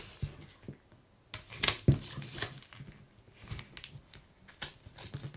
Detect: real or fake real